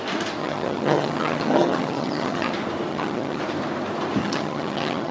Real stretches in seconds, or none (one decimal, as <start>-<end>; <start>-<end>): 0.0-0.4; 2.5-2.9; 3.4-4.2